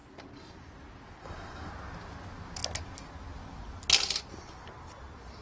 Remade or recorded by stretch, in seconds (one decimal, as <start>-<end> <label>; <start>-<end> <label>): 0.0-1.2 recorded; 1.2-1.7 remade; 1.7-5.4 recorded